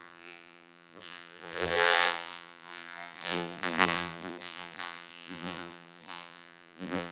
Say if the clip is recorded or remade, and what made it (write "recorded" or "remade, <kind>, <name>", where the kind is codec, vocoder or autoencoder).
remade, vocoder, BigVGAN v2